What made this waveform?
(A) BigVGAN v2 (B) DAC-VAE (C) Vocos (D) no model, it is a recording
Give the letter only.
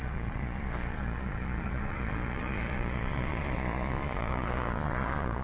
C